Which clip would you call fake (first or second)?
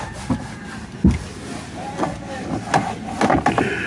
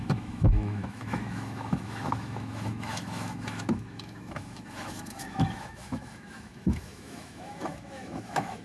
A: second